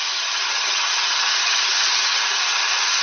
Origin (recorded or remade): remade